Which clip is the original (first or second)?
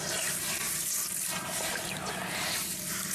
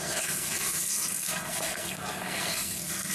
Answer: first